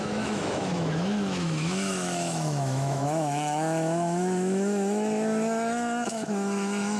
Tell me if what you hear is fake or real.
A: fake